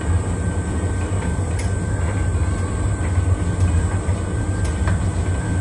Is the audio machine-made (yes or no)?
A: no